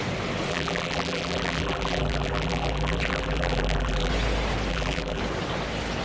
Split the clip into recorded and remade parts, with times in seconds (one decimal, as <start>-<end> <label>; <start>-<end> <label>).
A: 0.0-0.5 recorded; 0.5-4.1 remade; 4.1-4.7 recorded; 4.7-5.2 remade; 5.2-6.0 recorded